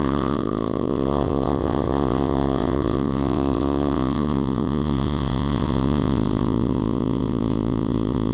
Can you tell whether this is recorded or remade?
remade